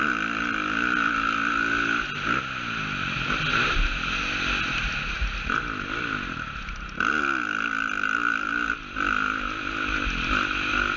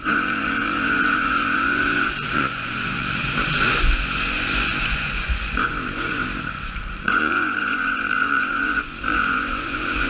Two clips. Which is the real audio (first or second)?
first